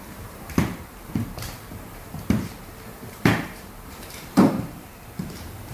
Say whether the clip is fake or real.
fake